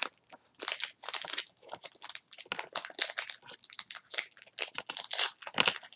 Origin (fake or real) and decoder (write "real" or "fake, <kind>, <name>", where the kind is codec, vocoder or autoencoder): real